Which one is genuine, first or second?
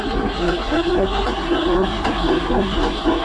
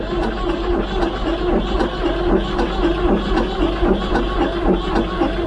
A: second